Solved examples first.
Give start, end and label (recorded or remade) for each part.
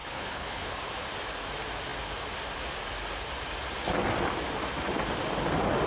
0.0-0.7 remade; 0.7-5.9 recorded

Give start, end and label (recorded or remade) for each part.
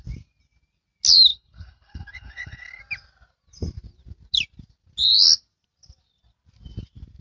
0.0-1.3 recorded; 1.3-2.8 remade; 2.8-7.2 recorded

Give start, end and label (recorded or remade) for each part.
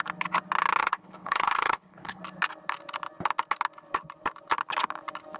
0.0-0.8 recorded; 0.8-2.2 remade; 2.2-5.4 recorded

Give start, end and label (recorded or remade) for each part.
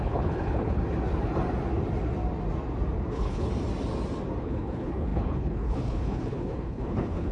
0.0-0.8 remade; 0.8-3.1 recorded; 3.1-3.5 remade; 3.5-4.4 recorded; 4.4-7.3 remade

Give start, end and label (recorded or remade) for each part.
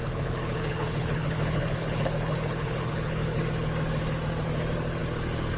0.0-3.4 remade; 3.4-5.6 recorded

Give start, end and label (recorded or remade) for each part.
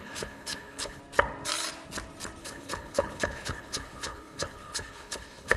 0.0-1.0 remade; 1.0-2.4 recorded; 2.4-5.6 remade